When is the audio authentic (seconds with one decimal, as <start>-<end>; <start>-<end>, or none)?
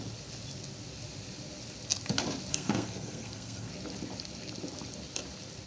0.0-2.5; 3.7-5.7